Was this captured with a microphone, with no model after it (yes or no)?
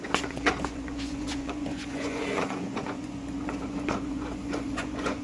no